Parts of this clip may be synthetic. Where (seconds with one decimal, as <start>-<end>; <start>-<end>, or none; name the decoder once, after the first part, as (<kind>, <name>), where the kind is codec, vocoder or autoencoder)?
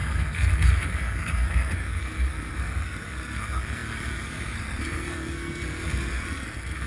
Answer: 0.0-6.9 (codec, SNAC)